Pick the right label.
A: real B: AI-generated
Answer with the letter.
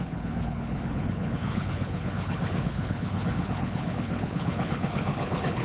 B